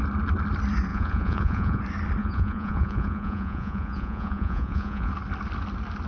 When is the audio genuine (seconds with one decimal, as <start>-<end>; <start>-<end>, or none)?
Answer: 0.0-0.9; 1.8-2.2; 5.1-6.1